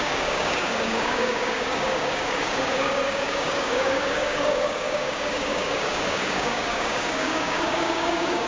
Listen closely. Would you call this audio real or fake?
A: fake